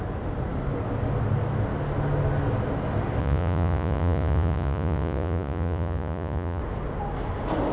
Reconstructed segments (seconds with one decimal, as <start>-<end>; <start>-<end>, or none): 3.2-6.6